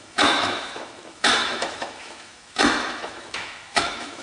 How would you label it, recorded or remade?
remade